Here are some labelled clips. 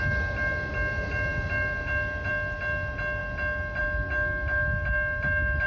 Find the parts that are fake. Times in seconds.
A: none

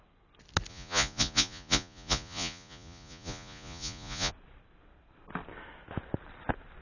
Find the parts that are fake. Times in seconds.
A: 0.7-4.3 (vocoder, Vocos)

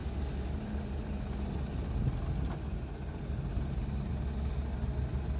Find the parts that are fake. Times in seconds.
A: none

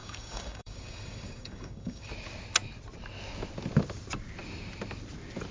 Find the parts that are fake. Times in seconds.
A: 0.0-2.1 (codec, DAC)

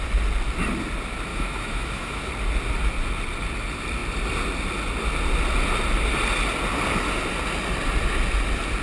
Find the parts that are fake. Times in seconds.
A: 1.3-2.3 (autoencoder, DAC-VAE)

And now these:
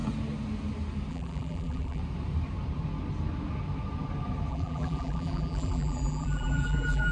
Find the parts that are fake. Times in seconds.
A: 1.1-2.0 (vocoder, BigVGAN v2); 4.5-7.1

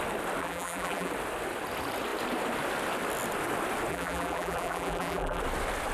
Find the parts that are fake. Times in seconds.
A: 0.4-1.1 (vocoder, BigVGAN v2); 3.9-5.4